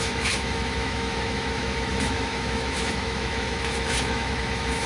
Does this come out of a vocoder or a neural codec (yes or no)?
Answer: yes